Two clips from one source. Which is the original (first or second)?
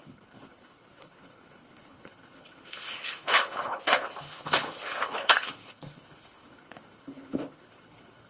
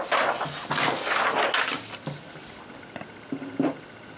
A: second